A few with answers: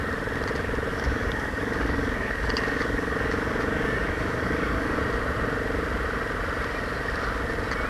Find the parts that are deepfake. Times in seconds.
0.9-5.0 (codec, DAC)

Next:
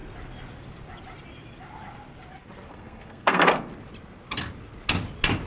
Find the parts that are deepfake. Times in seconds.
2.7-3.7 (codec, SNAC)

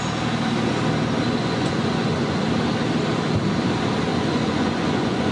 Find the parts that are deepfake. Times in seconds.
1.4-2.4 (vocoder, Vocos); 4.1-5.3

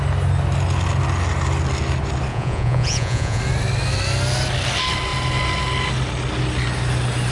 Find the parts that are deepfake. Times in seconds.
2.3-3.4 (vocoder, Vocos)

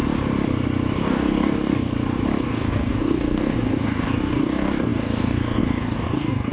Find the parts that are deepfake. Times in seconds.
1.0-1.9 (codec, DAC); 2.4-6.5